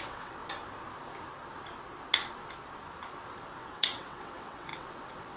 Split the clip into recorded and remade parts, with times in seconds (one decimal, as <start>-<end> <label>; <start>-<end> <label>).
0.0-0.4 remade; 0.4-3.6 recorded; 3.6-5.4 remade

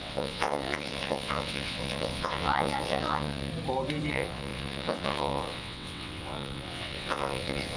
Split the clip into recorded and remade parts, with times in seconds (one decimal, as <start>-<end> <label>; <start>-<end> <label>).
0.0-3.5 remade; 3.5-4.1 recorded; 4.1-7.8 remade

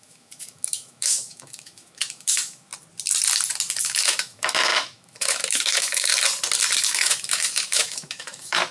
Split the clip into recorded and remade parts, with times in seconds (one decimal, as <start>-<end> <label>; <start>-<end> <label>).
0.0-2.7 remade; 2.7-3.8 recorded; 3.8-6.1 remade; 6.1-6.8 recorded; 6.8-8.7 remade

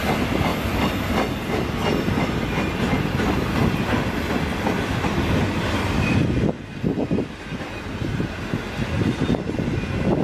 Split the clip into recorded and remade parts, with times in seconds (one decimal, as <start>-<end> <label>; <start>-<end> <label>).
0.0-7.0 recorded; 7.0-8.1 remade; 8.1-10.2 recorded

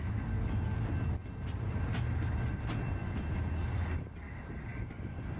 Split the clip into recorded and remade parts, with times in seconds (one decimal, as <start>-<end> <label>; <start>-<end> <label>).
0.0-5.4 recorded

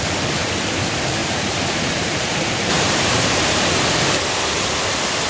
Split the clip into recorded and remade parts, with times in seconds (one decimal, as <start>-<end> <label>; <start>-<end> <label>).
0.0-1.2 recorded; 1.2-3.5 remade; 3.5-5.3 recorded

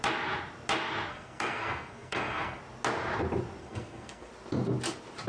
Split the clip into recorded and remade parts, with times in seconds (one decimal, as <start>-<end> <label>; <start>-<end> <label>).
0.0-1.1 recorded; 1.1-2.6 remade; 2.6-3.6 recorded; 3.6-4.3 remade; 4.3-5.3 recorded

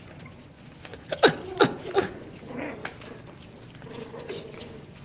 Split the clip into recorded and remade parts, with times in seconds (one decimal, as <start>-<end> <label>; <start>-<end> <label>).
0.0-0.9 remade; 0.9-1.6 recorded; 1.6-2.8 remade; 2.8-3.9 recorded; 3.9-5.0 remade